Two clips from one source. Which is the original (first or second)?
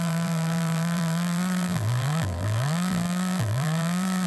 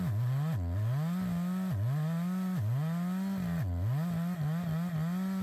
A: second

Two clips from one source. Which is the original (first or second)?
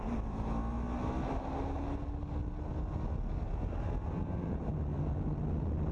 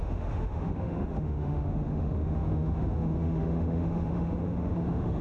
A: first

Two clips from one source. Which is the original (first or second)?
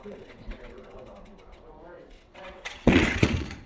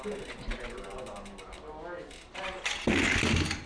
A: second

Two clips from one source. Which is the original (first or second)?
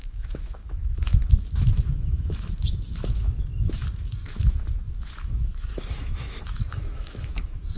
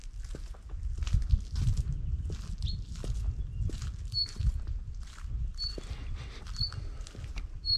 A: second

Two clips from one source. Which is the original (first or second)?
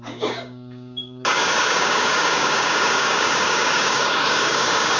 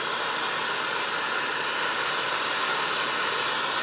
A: second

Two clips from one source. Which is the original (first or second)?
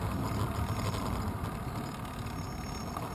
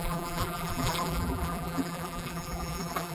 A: first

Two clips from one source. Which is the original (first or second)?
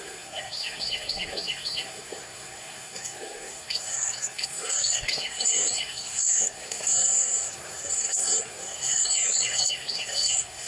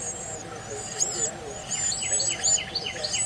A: second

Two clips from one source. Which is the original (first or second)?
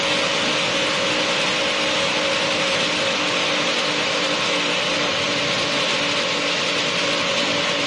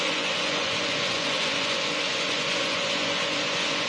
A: first